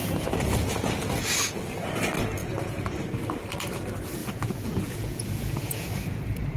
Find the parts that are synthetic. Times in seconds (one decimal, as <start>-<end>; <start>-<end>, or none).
0.0-1.1; 2.4-2.9; 4.2-6.6